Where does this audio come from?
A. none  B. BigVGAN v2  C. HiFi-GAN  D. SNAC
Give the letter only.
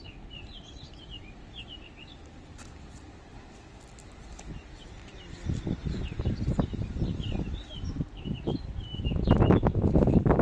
A